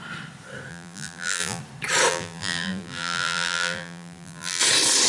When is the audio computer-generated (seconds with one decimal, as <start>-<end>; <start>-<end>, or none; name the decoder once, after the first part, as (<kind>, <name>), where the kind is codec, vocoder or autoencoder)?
0.7-1.6 (vocoder, BigVGAN v2); 2.1-4.6